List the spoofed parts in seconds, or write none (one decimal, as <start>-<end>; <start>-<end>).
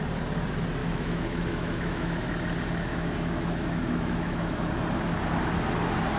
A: 0.8-2.3; 2.9-4.7